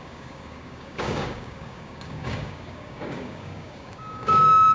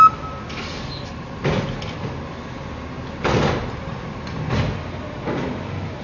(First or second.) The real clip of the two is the second